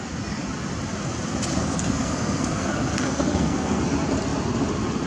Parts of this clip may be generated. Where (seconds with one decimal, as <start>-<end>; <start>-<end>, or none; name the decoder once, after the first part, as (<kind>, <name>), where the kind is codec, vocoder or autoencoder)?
1.6-3.8 (codec, SNAC)